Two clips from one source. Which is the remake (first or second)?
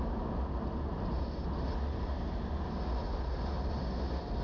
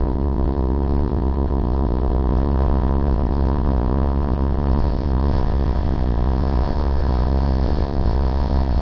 second